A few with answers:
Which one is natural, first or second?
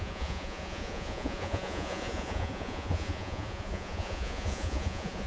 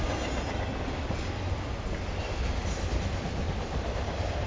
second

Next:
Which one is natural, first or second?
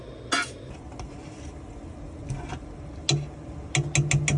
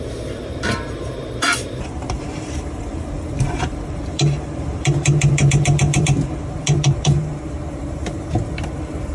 first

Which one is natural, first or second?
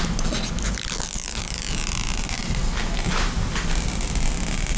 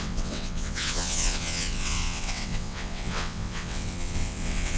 first